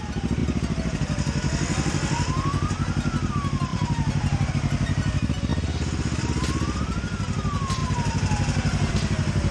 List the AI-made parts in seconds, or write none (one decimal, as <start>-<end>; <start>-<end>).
3.7-4.5